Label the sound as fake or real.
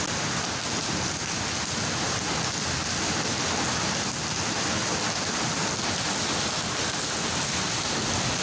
real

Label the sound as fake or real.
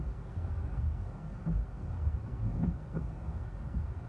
fake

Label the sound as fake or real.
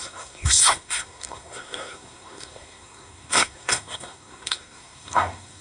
fake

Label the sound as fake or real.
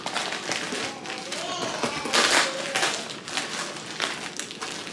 real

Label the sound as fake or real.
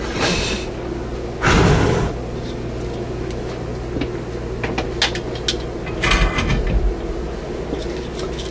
real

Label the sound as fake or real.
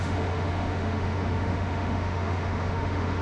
fake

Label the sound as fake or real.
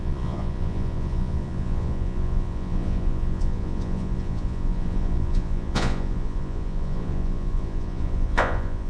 fake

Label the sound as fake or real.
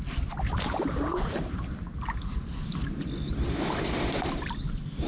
real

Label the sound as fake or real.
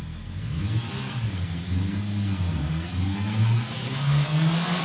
fake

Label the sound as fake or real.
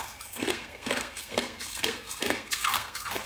fake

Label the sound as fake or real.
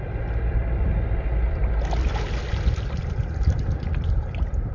fake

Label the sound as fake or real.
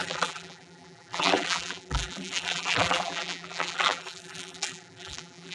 fake